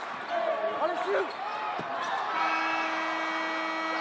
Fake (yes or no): no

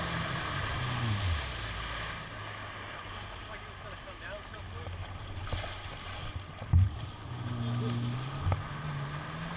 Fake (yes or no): no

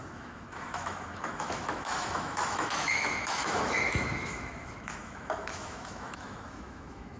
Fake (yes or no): yes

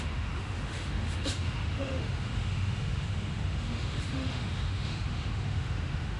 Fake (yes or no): yes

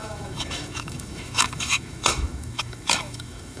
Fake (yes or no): yes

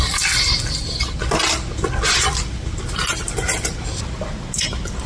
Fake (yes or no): no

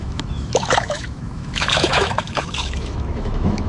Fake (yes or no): yes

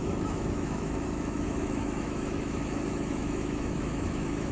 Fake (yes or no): yes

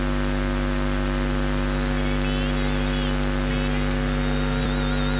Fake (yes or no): no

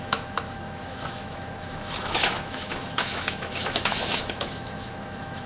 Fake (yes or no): yes